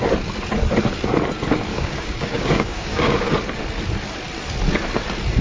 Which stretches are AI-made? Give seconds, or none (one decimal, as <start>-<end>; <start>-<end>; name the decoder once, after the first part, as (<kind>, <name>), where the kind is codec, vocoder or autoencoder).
1.7-3.3 (codec, DAC)